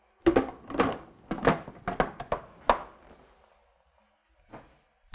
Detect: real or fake real